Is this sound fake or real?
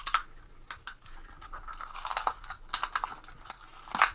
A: real